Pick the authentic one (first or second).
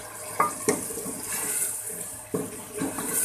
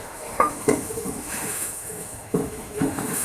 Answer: first